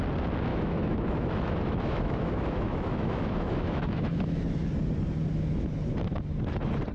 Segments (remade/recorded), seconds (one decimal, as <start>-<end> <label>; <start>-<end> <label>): 0.0-0.5 recorded; 0.5-4.4 remade; 4.4-6.9 recorded